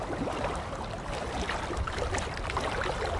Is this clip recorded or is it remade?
recorded